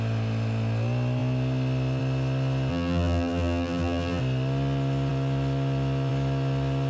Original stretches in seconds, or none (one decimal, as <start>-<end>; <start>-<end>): 0.0-2.7; 4.2-6.9